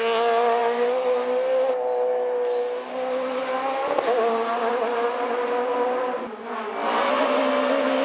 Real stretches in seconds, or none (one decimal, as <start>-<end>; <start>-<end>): 0.0-8.0